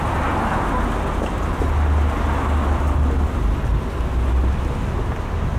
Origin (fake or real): real